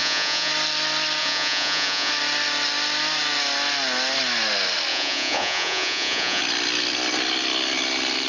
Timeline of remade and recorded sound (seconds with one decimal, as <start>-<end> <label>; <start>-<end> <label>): 0.0-0.5 remade; 0.5-1.2 recorded; 1.2-2.1 remade; 2.1-4.9 recorded; 4.9-6.4 remade; 6.4-8.3 recorded